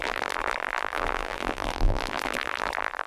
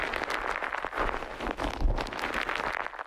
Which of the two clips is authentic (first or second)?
second